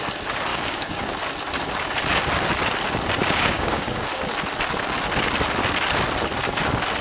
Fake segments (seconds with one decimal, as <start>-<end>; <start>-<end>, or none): 0.5-1.0; 3.2-4.2